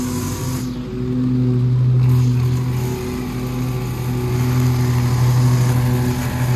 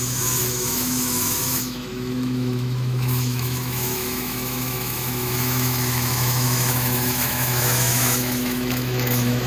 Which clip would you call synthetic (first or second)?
second